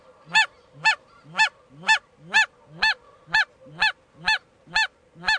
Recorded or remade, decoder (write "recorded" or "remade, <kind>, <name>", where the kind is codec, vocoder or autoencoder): recorded